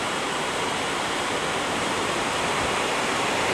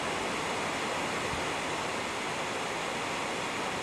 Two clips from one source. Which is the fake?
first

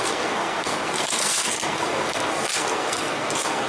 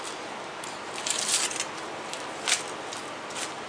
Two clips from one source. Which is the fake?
first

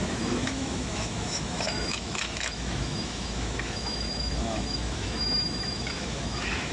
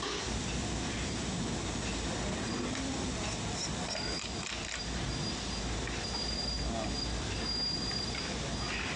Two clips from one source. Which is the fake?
first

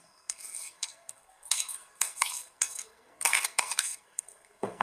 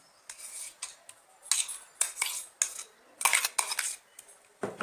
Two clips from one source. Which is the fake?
first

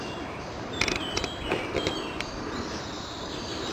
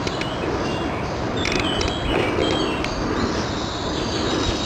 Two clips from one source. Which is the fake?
first